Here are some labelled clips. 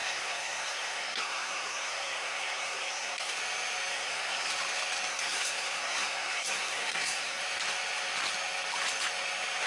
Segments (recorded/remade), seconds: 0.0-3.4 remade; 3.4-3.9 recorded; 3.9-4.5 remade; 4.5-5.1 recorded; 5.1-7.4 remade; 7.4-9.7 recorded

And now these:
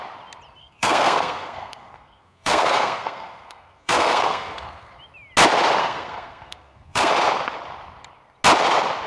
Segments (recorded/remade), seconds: 0.0-0.6 recorded; 0.6-5.0 remade; 5.0-5.8 recorded; 5.8-7.1 remade; 7.1-9.1 recorded

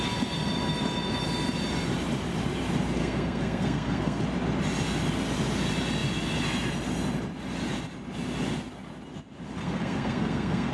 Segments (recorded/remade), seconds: 0.0-3.0 recorded; 3.0-4.2 remade; 4.2-9.6 recorded; 9.6-10.7 remade

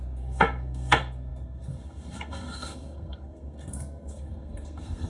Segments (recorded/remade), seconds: 0.0-5.1 remade

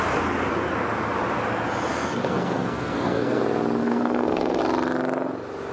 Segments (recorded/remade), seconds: 0.0-1.9 recorded; 1.9-3.4 remade; 3.4-3.8 recorded; 3.8-4.6 remade; 4.6-5.7 recorded